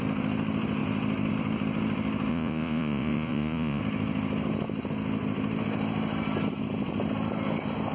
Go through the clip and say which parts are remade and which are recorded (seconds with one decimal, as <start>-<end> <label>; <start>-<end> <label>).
0.0-2.3 recorded; 2.3-3.8 remade; 3.8-7.9 recorded